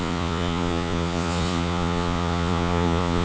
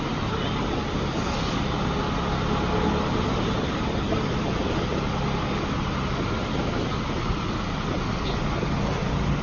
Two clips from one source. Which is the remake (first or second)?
first